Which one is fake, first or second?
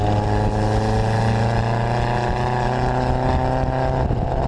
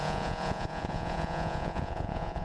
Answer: second